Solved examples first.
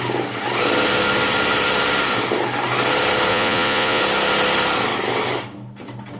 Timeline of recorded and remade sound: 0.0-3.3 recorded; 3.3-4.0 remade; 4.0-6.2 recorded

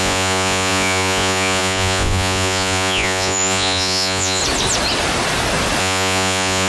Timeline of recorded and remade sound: 0.0-4.4 remade; 4.4-5.8 recorded; 5.8-6.7 remade